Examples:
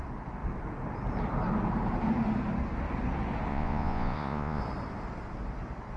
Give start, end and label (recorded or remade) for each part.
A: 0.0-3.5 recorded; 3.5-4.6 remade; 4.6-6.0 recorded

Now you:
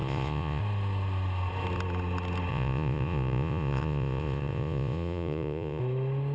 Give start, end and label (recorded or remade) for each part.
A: 0.0-0.6 remade; 0.6-2.5 recorded; 2.5-5.8 remade; 5.8-6.3 recorded

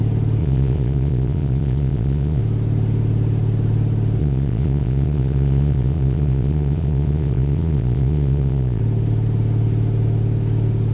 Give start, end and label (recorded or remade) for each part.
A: 0.0-0.4 recorded; 0.4-2.4 remade; 2.4-4.2 recorded; 4.2-8.8 remade; 8.8-10.9 recorded

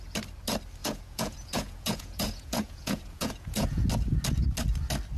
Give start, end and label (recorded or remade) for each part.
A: 0.0-0.8 recorded; 0.8-3.9 remade; 3.9-5.2 recorded

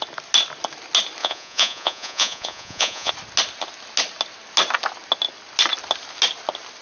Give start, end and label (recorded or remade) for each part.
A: 0.0-1.2 recorded; 1.2-3.1 remade; 3.1-6.8 recorded

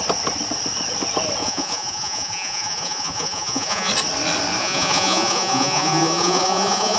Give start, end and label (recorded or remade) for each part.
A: 0.0-1.4 recorded; 1.4-3.9 remade; 3.9-4.6 recorded; 4.6-7.0 remade

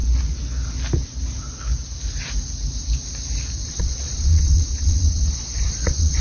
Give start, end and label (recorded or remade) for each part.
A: 0.0-3.7 recorded; 3.7-6.2 remade

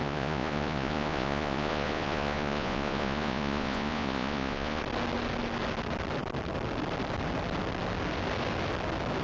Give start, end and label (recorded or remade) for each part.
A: 0.0-4.8 remade; 4.8-9.2 recorded